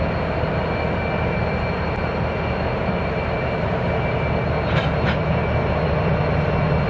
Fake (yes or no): no